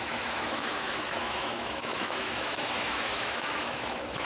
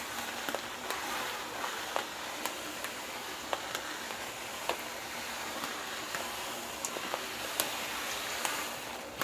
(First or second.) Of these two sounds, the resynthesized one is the first